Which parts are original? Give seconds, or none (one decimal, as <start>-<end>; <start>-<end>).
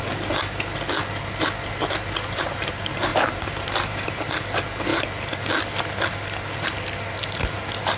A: 0.0-3.1; 4.3-8.0